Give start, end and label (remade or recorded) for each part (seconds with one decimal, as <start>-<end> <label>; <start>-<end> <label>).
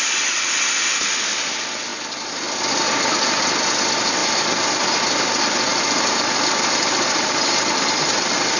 0.0-4.2 recorded; 4.2-4.8 remade; 4.8-5.7 recorded; 5.7-8.6 remade